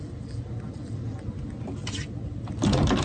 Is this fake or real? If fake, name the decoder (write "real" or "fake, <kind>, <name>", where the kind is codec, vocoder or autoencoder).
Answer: real